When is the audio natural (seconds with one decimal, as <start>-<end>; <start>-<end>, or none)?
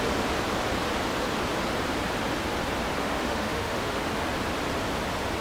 0.0-3.0; 4.0-5.4